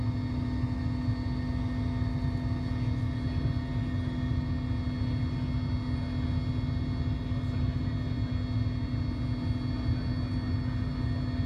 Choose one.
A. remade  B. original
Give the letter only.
B